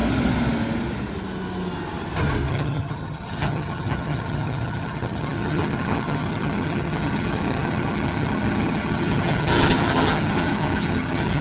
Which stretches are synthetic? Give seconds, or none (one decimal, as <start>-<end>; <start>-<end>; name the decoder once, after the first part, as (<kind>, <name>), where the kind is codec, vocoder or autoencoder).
2.5-11.4 (vocoder, HiFi-GAN)